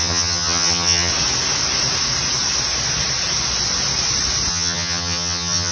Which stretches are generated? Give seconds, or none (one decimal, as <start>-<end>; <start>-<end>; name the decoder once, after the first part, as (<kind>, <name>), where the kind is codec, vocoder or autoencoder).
0.0-1.1 (vocoder, HiFi-GAN); 4.5-5.7